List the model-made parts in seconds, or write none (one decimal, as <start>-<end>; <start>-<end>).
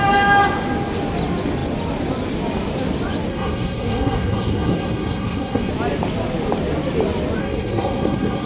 3.3-5.7; 7.4-8.5